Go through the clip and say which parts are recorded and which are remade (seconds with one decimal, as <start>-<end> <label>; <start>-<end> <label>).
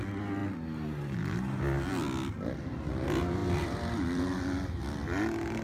0.0-3.4 recorded; 3.4-4.2 remade; 4.2-5.6 recorded